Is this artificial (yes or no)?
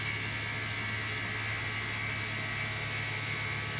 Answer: no